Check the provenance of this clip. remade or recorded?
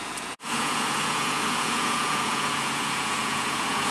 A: remade